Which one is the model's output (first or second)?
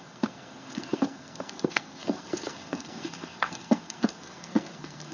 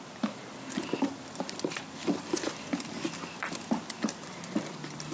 first